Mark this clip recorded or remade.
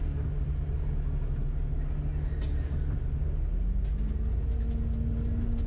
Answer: recorded